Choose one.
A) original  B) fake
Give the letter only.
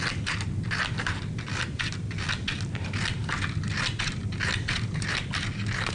A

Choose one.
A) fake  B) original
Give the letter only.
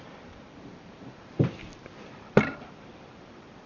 A